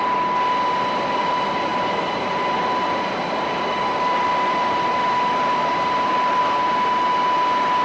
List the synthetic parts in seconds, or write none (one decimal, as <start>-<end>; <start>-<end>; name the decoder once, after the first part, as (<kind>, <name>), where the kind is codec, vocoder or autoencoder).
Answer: 1.7-6.4 (vocoder, BigVGAN v2)